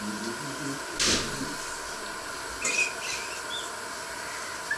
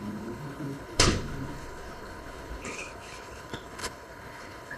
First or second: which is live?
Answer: first